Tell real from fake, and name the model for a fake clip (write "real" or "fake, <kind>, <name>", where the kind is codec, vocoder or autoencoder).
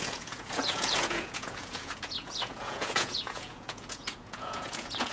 fake, vocoder, Vocos